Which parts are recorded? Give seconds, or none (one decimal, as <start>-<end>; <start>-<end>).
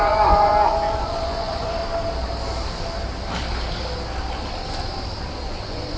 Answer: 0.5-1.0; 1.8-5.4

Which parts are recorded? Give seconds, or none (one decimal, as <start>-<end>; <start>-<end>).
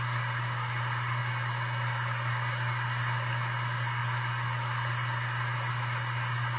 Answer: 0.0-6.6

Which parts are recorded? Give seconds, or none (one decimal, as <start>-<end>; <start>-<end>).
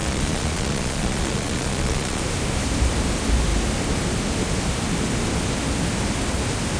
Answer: 2.2-6.8